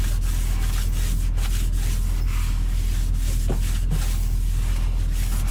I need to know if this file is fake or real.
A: real